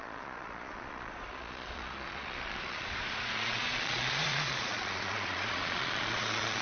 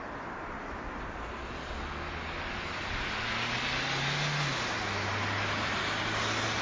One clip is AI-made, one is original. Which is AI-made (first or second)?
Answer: first